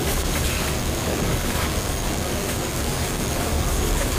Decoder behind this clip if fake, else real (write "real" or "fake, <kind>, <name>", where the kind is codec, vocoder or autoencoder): fake, codec, DAC